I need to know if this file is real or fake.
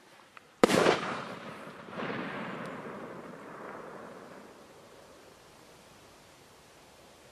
fake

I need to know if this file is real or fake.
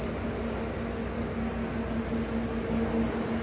real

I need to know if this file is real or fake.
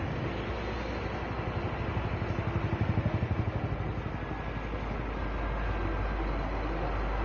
real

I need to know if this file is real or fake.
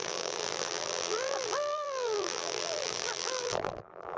fake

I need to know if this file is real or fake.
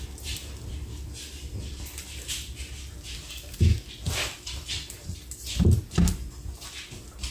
real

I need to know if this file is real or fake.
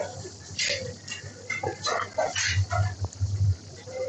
real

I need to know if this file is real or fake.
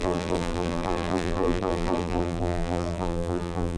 fake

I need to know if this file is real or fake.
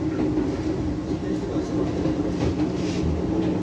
real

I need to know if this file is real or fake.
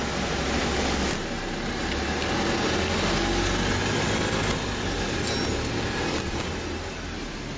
real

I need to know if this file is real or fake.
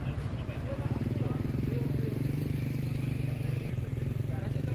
fake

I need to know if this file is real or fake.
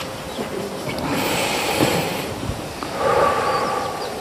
fake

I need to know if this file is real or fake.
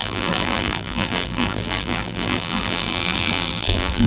fake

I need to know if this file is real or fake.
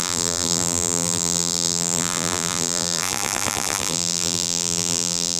fake